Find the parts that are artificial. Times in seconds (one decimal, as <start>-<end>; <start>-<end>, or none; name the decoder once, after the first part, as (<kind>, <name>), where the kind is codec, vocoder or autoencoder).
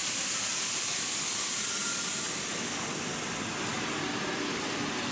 none